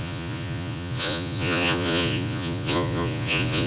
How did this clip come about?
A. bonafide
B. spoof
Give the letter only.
B